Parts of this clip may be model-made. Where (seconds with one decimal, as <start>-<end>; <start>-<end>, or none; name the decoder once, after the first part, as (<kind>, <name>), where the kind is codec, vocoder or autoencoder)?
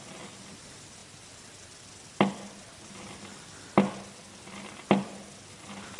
none